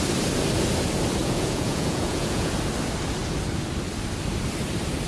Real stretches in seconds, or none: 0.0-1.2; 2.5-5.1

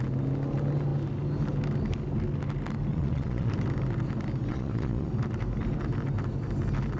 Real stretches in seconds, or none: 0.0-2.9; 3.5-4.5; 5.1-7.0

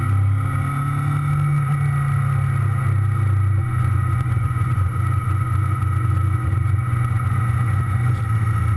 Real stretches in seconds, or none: 0.0-3.6; 8.2-8.8

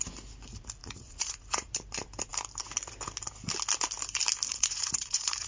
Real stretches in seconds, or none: 0.0-0.8; 1.7-4.5

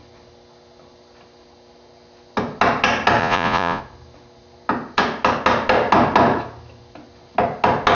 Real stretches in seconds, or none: 0.0-3.2; 3.8-7.9

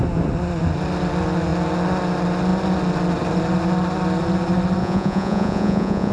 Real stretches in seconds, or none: 0.0-4.8

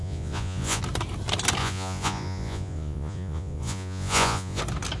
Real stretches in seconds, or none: 0.8-1.6; 4.6-5.0

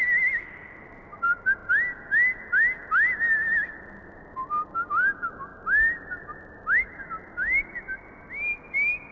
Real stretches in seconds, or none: 0.0-9.1